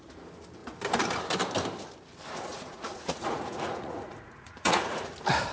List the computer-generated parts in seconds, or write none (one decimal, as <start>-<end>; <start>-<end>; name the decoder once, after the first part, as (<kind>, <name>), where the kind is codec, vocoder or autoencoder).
2.5-5.1 (vocoder, Vocos)